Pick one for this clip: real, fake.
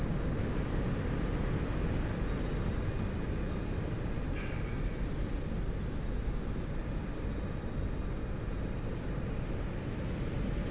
real